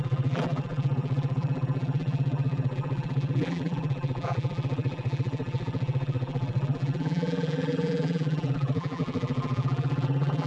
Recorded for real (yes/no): no